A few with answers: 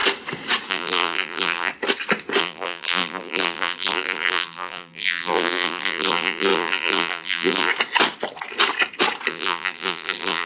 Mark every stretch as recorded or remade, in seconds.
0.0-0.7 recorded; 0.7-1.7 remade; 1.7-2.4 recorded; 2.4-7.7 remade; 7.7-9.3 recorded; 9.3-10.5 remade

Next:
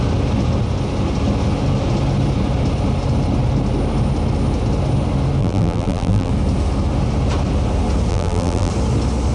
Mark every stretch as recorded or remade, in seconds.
0.0-5.4 recorded; 5.4-6.3 remade; 6.3-8.1 recorded; 8.1-8.7 remade; 8.7-9.3 recorded

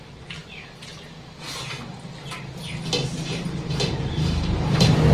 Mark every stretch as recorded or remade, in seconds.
0.0-0.4 remade; 0.4-3.2 recorded; 3.2-5.1 remade

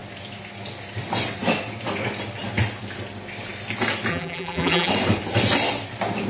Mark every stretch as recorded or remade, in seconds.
0.0-4.1 recorded; 4.1-4.9 remade; 4.9-6.3 recorded

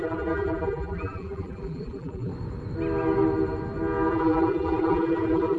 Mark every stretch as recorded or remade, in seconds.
0.0-2.3 remade; 2.3-4.1 recorded; 4.1-5.6 remade

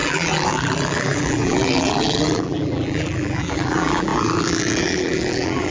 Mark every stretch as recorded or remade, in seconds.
0.0-5.7 remade